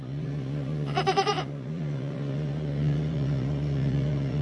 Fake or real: fake